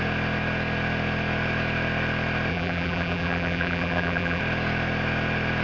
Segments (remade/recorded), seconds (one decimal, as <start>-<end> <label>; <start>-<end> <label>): 0.0-2.5 recorded; 2.5-4.4 remade; 4.4-5.6 recorded